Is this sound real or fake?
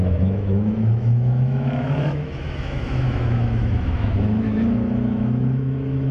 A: fake